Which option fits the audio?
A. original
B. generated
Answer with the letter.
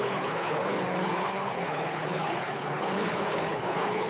B